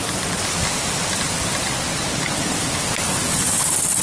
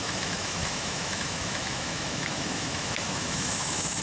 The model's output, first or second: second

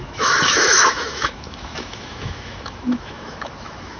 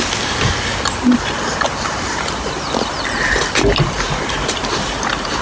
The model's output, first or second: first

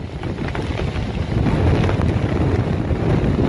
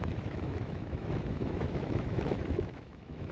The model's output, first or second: second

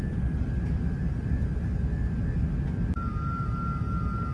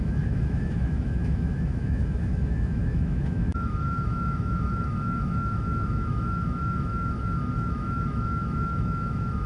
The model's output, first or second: second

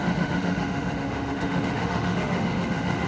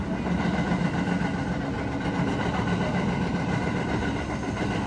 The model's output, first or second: first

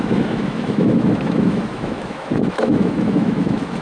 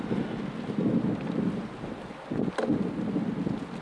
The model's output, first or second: first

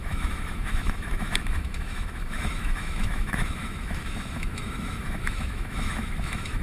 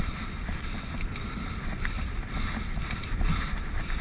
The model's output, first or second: first